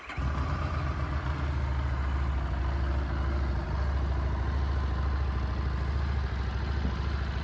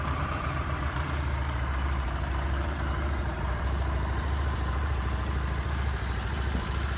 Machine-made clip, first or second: second